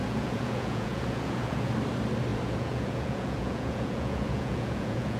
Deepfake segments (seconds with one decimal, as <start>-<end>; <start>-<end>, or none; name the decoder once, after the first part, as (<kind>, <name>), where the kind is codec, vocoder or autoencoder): 0.0-1.7 (vocoder, Vocos); 2.3-5.2